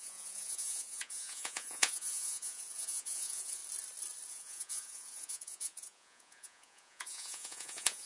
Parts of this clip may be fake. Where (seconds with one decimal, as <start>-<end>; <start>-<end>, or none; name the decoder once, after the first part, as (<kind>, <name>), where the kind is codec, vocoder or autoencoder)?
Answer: 0.0-3.6 (vocoder, Vocos); 4.3-8.1